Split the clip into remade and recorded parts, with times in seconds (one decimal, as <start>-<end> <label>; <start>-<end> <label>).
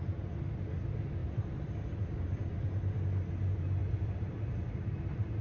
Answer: 0.0-1.2 recorded; 1.2-1.7 remade; 1.7-3.8 recorded; 3.8-4.8 remade; 4.8-5.4 recorded